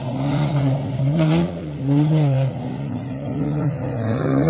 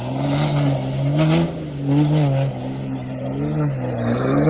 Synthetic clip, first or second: first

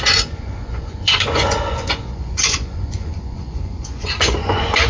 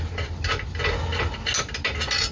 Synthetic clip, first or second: first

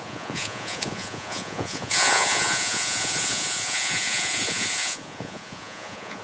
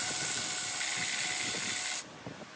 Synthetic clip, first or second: first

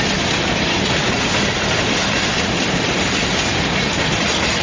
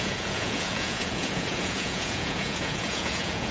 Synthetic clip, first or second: second